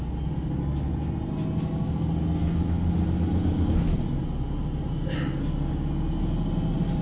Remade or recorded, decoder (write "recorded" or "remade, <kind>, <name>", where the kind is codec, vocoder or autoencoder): recorded